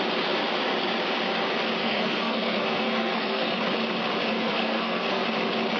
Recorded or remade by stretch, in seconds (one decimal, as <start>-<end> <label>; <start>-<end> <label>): 0.0-1.8 recorded; 1.8-3.6 remade; 3.6-4.3 recorded; 4.3-5.2 remade; 5.2-5.8 recorded